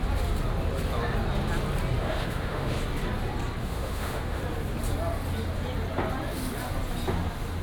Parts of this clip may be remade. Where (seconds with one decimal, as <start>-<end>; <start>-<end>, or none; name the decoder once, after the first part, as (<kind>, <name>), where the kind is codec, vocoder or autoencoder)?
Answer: 2.0-2.8 (autoencoder, DAC-VAE); 3.6-4.4